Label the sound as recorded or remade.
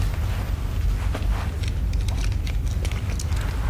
recorded